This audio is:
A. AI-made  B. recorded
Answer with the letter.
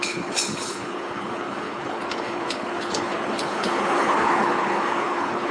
A